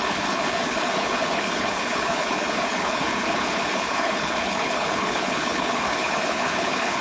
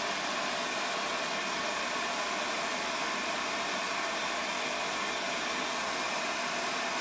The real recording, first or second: second